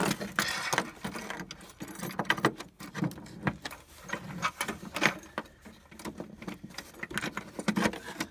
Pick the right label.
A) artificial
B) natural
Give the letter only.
B